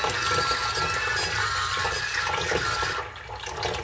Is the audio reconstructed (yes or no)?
no